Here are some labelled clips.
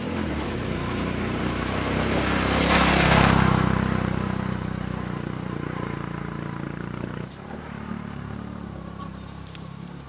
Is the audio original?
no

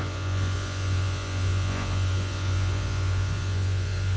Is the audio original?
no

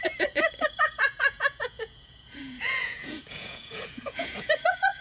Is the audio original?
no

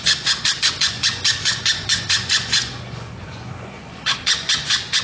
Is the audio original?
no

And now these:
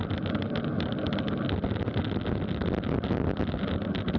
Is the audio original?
yes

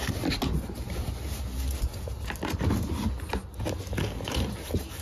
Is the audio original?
yes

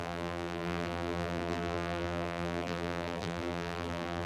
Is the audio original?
no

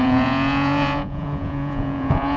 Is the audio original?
no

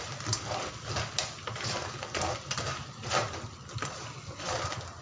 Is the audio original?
yes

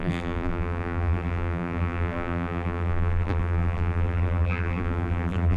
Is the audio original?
no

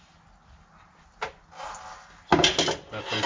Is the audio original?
yes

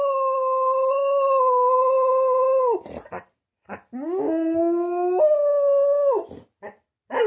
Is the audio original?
yes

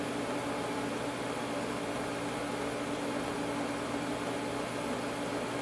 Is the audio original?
yes